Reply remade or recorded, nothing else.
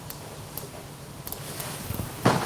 recorded